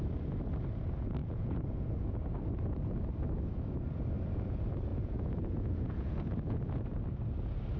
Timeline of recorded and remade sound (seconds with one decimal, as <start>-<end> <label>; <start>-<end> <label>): 0.0-1.2 recorded; 1.2-2.2 remade; 2.2-4.9 recorded; 4.9-7.0 remade; 7.0-7.8 recorded